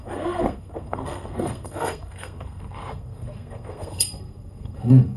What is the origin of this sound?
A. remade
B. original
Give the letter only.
A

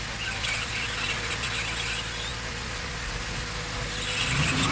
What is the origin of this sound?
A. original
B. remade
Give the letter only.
A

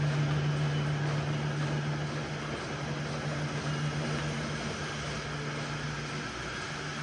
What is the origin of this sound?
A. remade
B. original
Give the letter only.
B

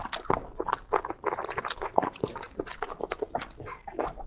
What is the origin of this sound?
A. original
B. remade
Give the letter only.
B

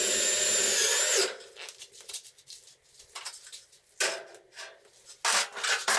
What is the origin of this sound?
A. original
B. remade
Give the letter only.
A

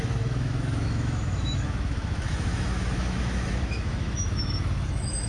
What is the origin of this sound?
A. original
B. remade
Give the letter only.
B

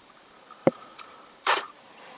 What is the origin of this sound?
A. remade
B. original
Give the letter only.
A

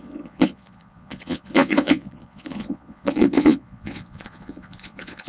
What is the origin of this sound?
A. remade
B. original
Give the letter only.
A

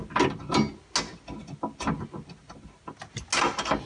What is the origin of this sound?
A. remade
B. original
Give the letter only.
B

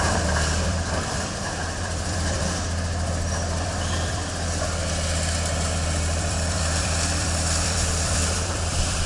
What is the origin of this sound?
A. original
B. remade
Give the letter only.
B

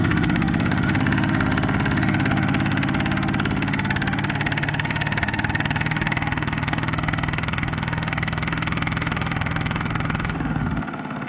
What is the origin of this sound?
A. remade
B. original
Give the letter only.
A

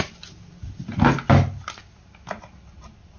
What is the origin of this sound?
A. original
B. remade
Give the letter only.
A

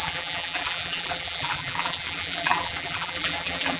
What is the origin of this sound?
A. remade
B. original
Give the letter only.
A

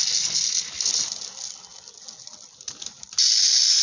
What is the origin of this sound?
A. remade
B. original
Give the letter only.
B